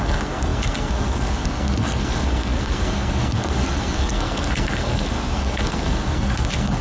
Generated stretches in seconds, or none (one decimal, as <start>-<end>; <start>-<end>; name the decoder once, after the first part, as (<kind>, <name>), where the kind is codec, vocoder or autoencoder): 0.0-6.8 (codec, SNAC)